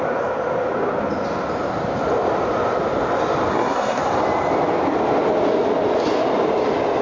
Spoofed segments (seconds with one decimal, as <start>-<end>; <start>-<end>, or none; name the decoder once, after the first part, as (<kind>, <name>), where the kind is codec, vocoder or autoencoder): 3.5-4.0 (codec, SNAC)